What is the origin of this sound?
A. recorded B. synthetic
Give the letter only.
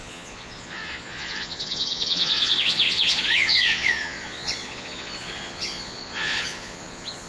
B